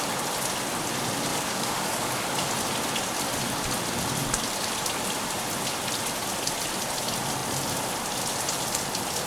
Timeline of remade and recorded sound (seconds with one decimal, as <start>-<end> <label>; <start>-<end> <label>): 0.0-1.3 recorded; 1.3-2.5 remade; 2.5-9.3 recorded